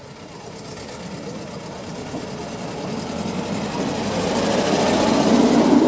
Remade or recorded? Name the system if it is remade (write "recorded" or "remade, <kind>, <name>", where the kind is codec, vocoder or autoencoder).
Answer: recorded